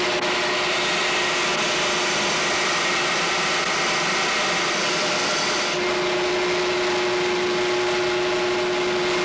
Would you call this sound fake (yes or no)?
no